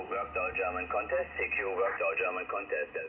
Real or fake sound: real